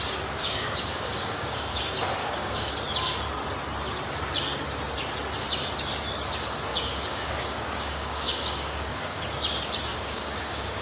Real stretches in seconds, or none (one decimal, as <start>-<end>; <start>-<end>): 0.0-0.4; 1.8-2.2; 2.7-6.7; 9.2-9.9